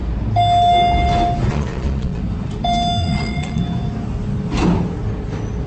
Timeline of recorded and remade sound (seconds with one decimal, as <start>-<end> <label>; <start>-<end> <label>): 0.0-1.5 recorded; 1.5-2.2 remade; 2.2-3.0 recorded; 3.0-3.6 remade; 3.6-5.7 recorded